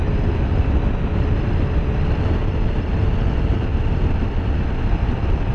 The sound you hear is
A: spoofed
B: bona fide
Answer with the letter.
B